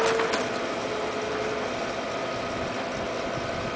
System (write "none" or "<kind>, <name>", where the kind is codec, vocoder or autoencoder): none